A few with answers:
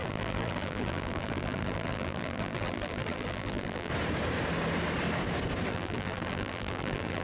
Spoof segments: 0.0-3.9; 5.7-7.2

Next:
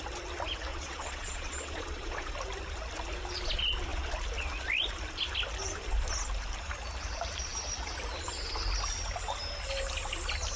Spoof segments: 0.7-2.3

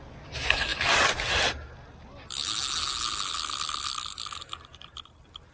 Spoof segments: none

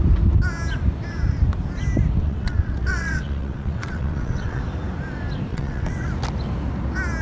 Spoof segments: 2.2-4.6; 5.5-6.1

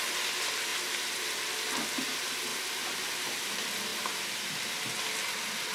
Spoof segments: 2.5-3.5

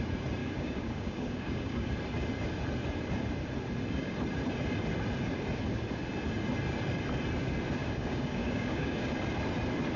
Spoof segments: 0.4-1.9; 7.8-9.1

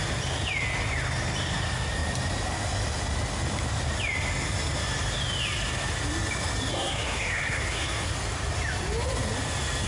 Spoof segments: 6.7-8.1

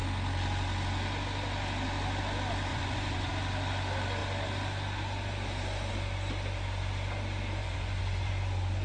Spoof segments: 2.7-3.3; 7.6-8.3